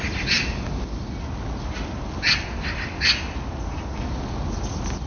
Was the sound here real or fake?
real